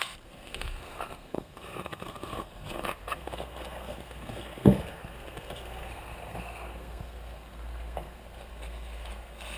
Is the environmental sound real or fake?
fake